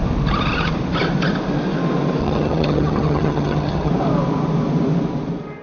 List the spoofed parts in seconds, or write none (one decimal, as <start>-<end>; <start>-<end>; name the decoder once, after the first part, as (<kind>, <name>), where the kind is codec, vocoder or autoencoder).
2.2-3.9 (vocoder, HiFi-GAN)